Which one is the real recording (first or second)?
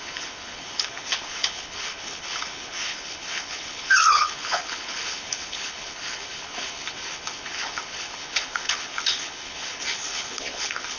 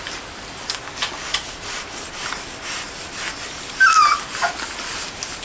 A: second